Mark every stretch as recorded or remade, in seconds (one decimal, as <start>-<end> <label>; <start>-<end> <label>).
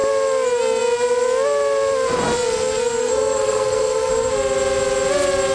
0.0-3.0 recorded; 3.0-4.1 remade; 4.1-5.5 recorded